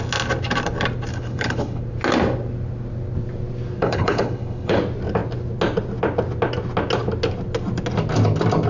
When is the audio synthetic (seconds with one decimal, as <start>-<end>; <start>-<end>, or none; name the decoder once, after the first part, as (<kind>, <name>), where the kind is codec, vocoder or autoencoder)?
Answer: 1.1-1.8 (codec, HILCodec); 3.8-4.8